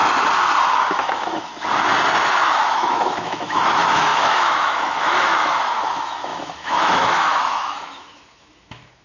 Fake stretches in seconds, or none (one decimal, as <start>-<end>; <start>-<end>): 0.7-1.5; 2.3-9.0